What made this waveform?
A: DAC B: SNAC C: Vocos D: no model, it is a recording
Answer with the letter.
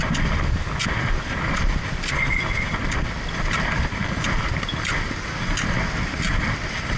D